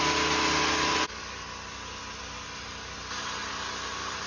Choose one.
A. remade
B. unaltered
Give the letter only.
B